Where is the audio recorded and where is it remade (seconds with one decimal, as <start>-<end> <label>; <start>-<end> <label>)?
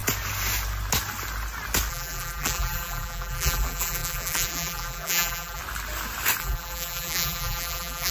0.0-1.9 recorded; 1.9-5.6 remade; 5.6-6.4 recorded; 6.4-8.1 remade